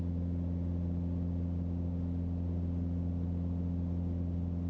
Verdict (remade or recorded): recorded